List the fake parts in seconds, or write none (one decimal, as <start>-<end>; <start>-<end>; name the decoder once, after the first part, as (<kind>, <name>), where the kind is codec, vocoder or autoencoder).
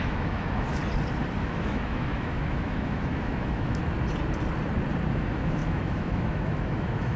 0.0-0.8 (autoencoder, DAC-VAE); 1.4-3.8; 5.1-7.2